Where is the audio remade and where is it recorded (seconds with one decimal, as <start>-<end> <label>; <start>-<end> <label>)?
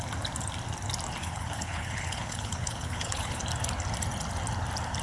0.0-1.2 recorded; 1.2-3.4 remade; 3.4-5.0 recorded